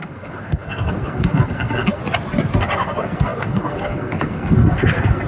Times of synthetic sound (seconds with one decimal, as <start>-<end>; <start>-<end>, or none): 0.0-2.0; 2.6-5.3